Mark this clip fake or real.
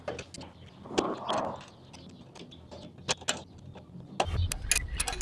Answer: real